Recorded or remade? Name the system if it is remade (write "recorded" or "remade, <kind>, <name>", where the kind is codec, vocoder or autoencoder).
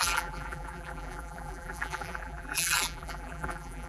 remade, vocoder, BigVGAN v2